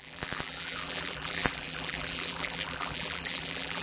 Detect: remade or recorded remade